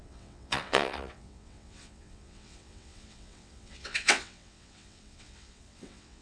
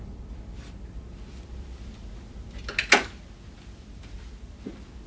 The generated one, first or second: first